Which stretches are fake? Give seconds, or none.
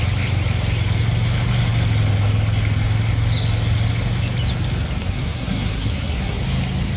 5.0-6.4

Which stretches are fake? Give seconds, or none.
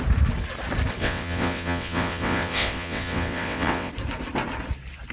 1.0-3.9